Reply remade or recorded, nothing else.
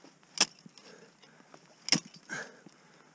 recorded